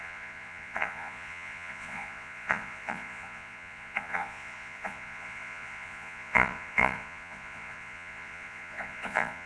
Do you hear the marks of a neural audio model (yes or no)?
yes